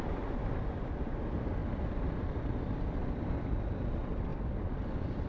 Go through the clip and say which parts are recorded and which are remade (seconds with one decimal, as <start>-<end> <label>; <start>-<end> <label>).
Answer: 0.0-1.6 remade; 1.6-3.8 recorded; 3.8-5.3 remade